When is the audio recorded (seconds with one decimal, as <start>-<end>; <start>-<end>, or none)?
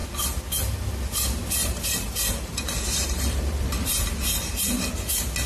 0.0-1.6; 4.9-5.5